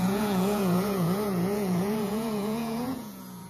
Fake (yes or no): yes